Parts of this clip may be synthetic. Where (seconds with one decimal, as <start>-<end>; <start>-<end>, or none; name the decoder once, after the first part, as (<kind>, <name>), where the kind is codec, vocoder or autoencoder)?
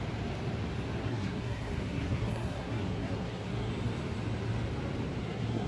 1.0-3.7 (codec, SNAC); 5.2-5.7